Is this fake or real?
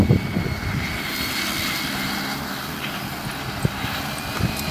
real